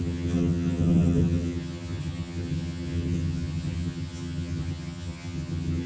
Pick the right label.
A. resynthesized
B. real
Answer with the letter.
A